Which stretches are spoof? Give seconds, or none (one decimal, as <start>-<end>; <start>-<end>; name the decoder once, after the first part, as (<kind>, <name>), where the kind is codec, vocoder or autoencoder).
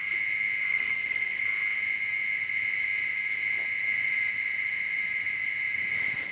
0.7-1.4 (codec, SNAC)